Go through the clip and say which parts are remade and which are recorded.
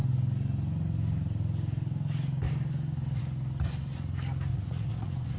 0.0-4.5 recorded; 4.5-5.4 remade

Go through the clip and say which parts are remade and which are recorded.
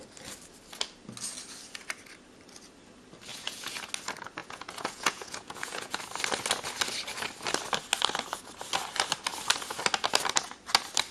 0.0-3.3 recorded; 3.3-3.8 remade; 3.8-4.4 recorded; 4.4-6.0 remade; 6.0-11.1 recorded